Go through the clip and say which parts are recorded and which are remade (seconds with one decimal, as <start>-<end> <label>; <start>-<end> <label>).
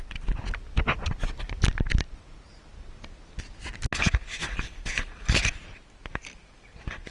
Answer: 0.0-7.1 recorded